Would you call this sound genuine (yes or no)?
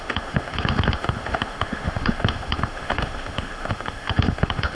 no